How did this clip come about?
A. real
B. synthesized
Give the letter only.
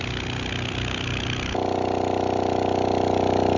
A